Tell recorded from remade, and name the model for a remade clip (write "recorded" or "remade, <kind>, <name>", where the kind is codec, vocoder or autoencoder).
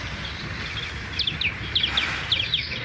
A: recorded